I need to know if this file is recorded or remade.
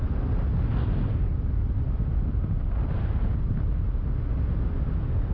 recorded